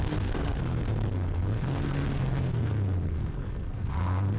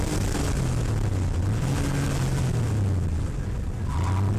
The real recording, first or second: second